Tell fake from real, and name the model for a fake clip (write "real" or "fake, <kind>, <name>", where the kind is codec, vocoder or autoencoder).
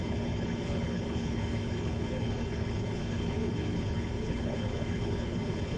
fake, codec, HILCodec